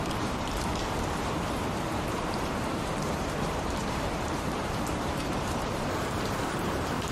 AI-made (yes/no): yes